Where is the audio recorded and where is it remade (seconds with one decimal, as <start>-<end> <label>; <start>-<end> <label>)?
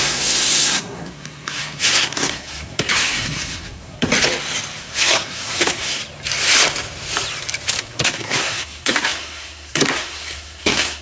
0.0-4.1 remade; 4.1-4.8 recorded; 4.8-6.0 remade; 6.0-7.8 recorded; 7.8-11.0 remade